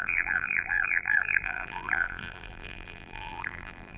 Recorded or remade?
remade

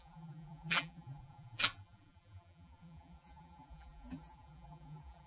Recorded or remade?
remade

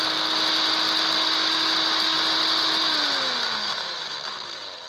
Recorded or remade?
recorded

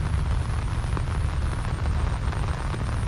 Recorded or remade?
recorded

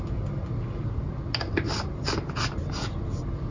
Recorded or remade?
recorded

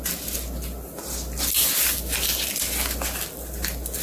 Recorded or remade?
recorded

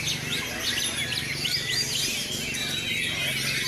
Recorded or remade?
recorded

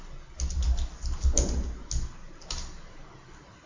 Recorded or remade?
recorded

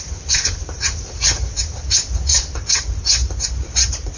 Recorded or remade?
remade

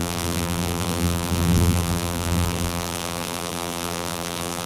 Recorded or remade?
remade